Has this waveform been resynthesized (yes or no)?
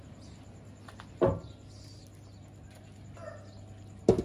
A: no